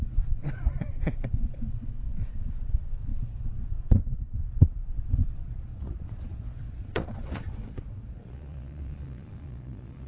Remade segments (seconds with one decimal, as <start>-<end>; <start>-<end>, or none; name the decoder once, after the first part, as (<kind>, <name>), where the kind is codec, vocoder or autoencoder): 0.0-10.1 (vocoder, Vocos)